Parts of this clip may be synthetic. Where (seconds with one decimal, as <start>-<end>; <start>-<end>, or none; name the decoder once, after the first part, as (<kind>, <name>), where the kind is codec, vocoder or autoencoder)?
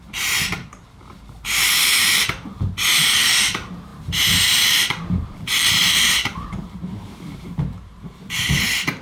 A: 0.0-2.2 (vocoder, BigVGAN v2); 3.0-9.0